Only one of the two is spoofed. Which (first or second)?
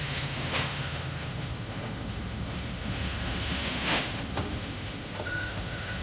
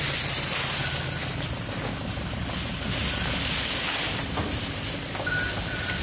first